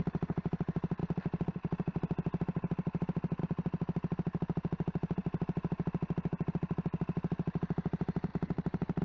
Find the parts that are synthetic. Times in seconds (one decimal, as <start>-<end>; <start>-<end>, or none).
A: 0.0-1.0; 3.4-5.2; 6.5-9.0